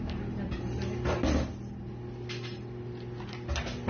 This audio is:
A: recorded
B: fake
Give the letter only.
A